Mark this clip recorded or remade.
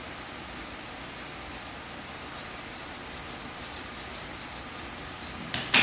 recorded